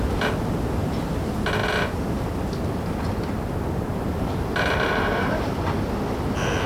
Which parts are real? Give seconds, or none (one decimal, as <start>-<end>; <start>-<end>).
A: 0.0-3.9; 5.6-6.7

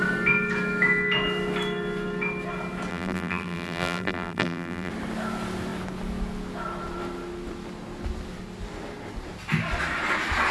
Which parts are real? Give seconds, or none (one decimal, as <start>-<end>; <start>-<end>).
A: 0.0-2.9; 4.9-10.5

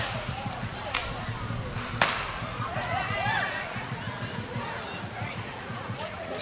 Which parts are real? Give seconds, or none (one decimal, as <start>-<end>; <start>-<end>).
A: 1.0-2.3

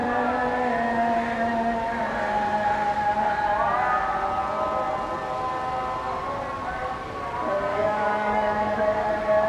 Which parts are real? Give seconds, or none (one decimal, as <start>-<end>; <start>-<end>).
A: 0.0-7.7; 9.1-9.5

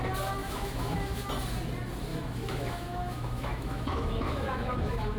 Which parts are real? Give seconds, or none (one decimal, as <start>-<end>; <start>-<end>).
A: 0.0-0.4; 1.2-2.1

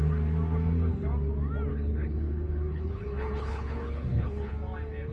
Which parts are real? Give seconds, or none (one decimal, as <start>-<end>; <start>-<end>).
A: 0.0-1.7; 4.5-5.1

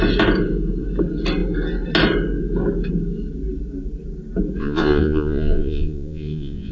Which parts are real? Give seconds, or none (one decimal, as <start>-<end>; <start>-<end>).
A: 0.0-4.6

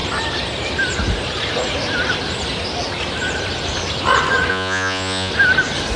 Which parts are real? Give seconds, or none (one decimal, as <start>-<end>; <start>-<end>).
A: 0.0-4.5; 5.3-6.0